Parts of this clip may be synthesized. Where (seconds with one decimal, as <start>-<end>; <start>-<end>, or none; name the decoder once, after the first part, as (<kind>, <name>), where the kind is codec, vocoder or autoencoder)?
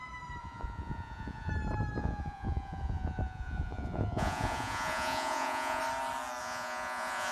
0.4-1.5 (vocoder, Vocos); 2.0-5.8; 6.4-7.3